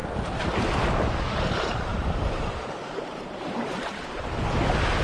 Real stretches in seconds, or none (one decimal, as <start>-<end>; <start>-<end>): 0.0-1.9; 4.5-5.0